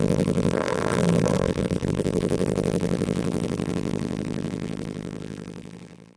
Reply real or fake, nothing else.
fake